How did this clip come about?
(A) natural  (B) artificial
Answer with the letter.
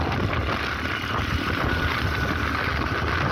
A